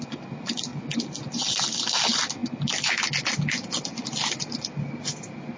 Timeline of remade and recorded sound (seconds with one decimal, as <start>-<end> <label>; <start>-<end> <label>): 0.0-5.6 recorded